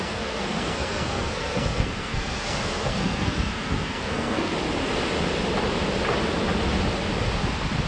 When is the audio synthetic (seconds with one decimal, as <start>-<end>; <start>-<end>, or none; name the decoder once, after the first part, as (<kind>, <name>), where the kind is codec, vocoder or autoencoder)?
0.0-4.5 (codec, SNAC)